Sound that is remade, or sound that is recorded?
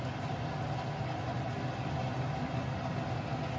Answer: recorded